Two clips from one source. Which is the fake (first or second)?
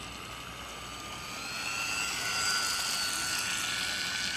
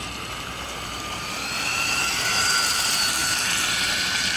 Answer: second